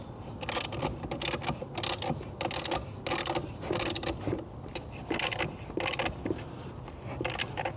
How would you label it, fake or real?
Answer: real